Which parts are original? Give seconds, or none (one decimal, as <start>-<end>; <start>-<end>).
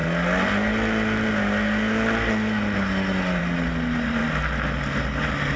0.0-5.6